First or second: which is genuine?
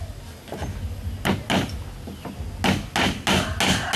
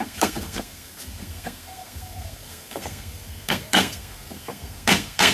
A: first